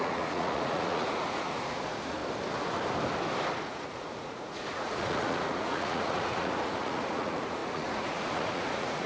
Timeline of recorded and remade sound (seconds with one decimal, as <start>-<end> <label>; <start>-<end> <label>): 0.0-2.2 remade; 2.2-3.7 recorded; 3.7-9.1 remade